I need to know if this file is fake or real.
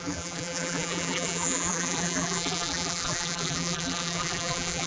fake